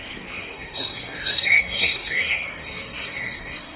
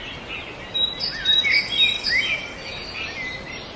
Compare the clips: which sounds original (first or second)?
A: second